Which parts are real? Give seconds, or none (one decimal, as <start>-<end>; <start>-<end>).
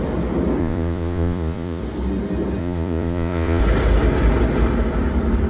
0.0-0.6; 1.8-2.6; 3.6-5.5